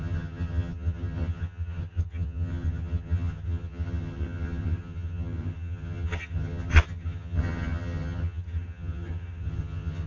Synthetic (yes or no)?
yes